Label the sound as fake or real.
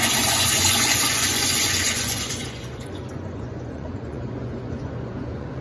fake